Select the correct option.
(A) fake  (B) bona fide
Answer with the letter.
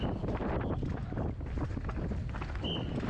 B